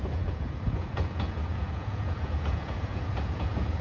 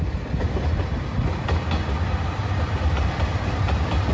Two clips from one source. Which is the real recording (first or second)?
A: second